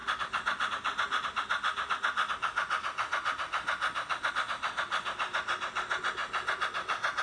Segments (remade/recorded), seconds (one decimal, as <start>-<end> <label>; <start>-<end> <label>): 0.0-7.2 recorded